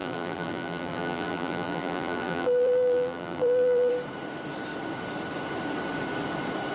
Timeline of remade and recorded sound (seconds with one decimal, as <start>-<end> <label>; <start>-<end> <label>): 0.0-3.9 remade; 3.9-6.7 recorded